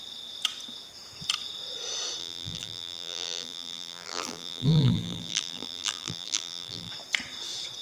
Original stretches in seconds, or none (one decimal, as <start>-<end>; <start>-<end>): 0.0-2.2; 6.9-7.8